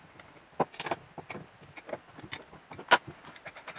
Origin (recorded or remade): recorded